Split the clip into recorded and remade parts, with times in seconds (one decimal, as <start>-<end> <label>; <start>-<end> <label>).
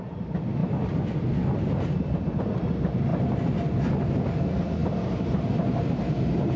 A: 0.0-6.6 recorded